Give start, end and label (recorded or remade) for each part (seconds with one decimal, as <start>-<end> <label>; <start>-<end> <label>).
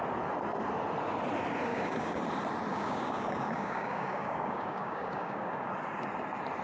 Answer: 0.0-1.7 recorded; 1.7-2.2 remade; 2.2-2.7 recorded; 2.7-5.7 remade; 5.7-6.6 recorded